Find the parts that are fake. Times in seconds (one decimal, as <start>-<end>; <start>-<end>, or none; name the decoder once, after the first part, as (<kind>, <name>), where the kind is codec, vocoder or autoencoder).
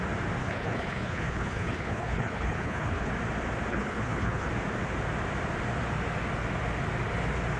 0.4-3.1 (codec, HILCodec); 3.7-4.5